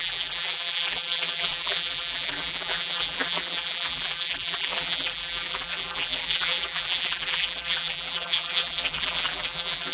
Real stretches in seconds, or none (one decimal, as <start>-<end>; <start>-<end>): none